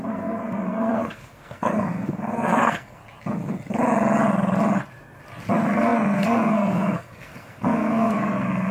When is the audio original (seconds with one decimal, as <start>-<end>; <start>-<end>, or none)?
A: 3.0-5.5